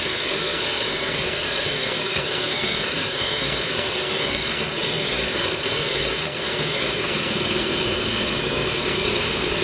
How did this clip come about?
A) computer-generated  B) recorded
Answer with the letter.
A